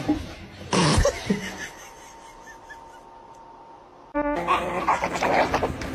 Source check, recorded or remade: recorded